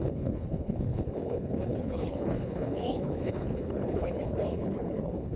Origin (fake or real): fake